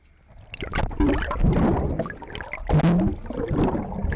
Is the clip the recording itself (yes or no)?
yes